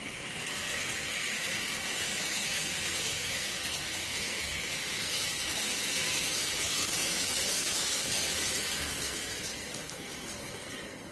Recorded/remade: remade